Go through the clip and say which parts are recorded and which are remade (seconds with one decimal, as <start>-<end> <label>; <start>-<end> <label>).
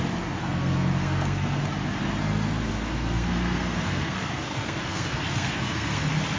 0.0-0.4 recorded; 0.4-1.6 remade; 1.6-2.2 recorded; 2.2-6.0 remade; 6.0-6.4 recorded